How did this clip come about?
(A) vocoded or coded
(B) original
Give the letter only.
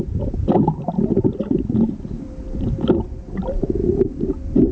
B